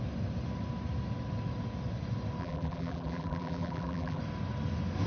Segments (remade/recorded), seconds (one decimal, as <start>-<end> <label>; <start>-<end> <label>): 0.0-2.4 recorded; 2.4-4.2 remade; 4.2-5.1 recorded